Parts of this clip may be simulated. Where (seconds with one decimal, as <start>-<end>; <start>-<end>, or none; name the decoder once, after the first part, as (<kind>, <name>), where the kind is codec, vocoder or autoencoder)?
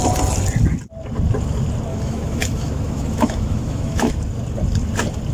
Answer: 1.9-4.1 (autoencoder, DAC-VAE)